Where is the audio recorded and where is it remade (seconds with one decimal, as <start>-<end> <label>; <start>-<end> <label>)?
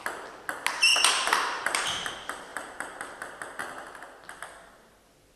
0.0-0.9 recorded; 0.9-2.1 remade; 2.1-2.5 recorded; 2.5-3.0 remade; 3.0-5.4 recorded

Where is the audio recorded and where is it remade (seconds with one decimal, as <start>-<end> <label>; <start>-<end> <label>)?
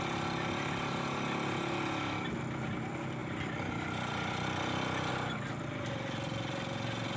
0.0-7.2 recorded